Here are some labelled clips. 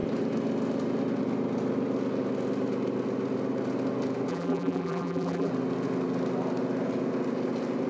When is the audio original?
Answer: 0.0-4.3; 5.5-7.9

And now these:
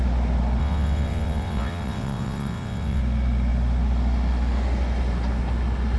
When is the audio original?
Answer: 0.0-0.6; 3.0-6.0

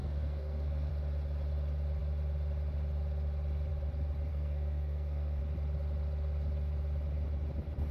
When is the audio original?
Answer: 0.9-4.3; 5.4-7.9

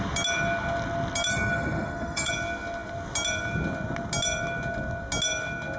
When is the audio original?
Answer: 0.0-1.3; 2.3-5.8

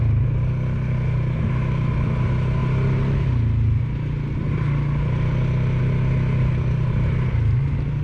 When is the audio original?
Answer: 0.0-8.0

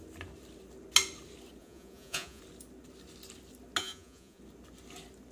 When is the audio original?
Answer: 0.0-1.6; 2.4-3.8; 4.4-5.3

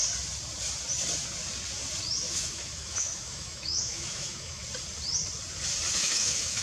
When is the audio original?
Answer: 0.0-2.3; 4.6-5.9